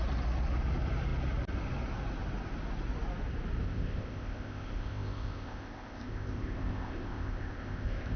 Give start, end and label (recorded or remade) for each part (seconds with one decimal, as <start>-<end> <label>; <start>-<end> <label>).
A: 0.0-3.6 recorded; 3.6-8.2 remade